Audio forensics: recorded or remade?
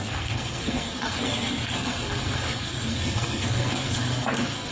remade